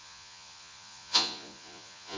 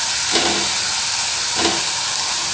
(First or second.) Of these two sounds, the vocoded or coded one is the first